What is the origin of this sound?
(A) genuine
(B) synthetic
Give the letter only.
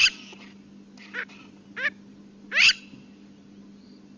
A